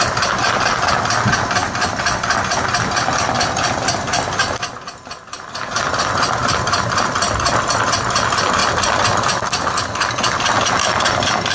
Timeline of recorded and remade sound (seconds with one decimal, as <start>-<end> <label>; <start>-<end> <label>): 0.0-11.5 recorded